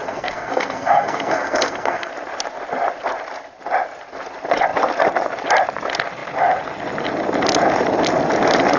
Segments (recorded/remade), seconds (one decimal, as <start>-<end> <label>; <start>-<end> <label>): 0.0-2.1 remade; 2.1-8.8 recorded